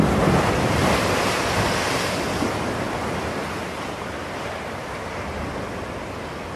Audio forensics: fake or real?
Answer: real